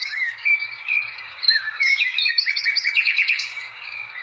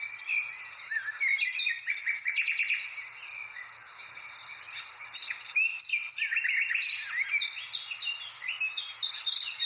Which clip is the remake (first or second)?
first